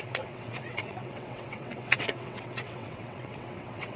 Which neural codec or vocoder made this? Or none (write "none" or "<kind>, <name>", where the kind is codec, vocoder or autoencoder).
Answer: vocoder, WaveNeXt